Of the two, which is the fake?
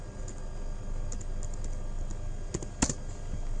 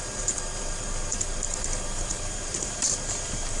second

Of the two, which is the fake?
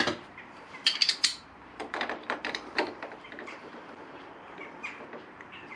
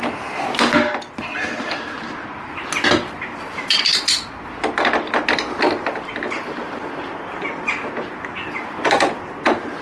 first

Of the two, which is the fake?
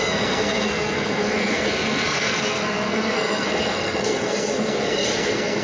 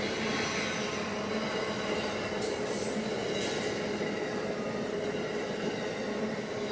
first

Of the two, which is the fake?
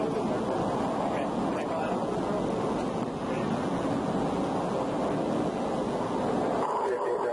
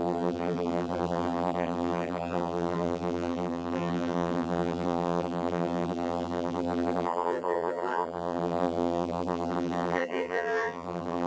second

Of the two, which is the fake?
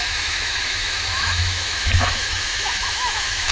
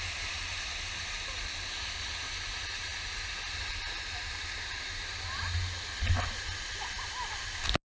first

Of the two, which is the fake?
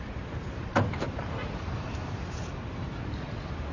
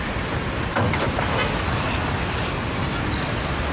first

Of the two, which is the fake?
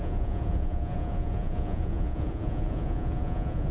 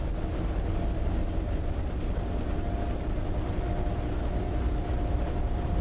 first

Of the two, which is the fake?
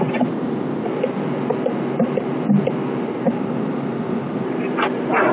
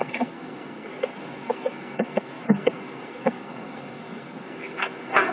second